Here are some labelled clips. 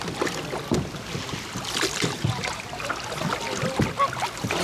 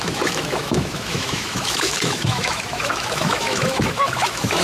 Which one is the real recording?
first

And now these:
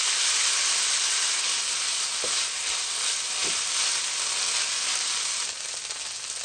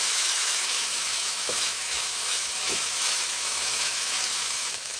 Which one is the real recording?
first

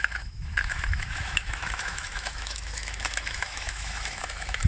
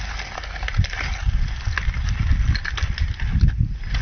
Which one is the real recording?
second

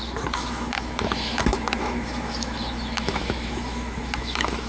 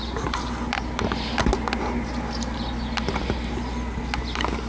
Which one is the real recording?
second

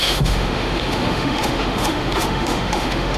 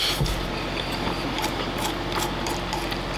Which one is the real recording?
second